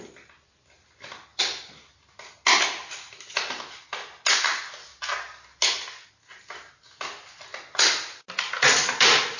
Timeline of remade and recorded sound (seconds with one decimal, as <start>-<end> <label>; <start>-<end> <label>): 0.0-9.4 recorded